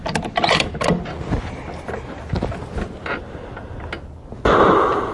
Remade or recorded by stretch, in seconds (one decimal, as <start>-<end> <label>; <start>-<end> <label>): 0.0-5.1 recorded